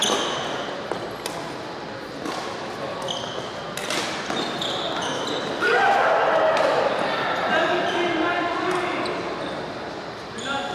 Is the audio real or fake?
real